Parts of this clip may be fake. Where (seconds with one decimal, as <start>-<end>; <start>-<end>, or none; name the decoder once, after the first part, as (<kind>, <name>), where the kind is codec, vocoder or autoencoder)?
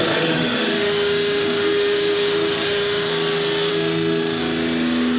0.0-3.1 (autoencoder, DAC-VAE); 3.7-4.4